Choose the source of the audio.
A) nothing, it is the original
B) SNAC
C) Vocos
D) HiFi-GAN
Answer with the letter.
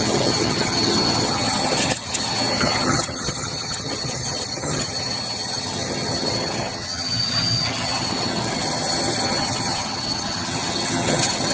D